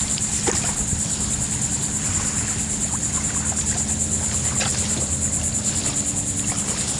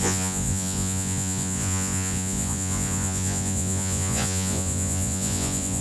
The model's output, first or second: second